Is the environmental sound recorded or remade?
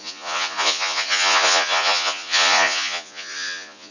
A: remade